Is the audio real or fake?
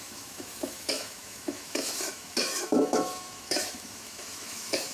fake